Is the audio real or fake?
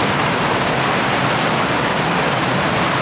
real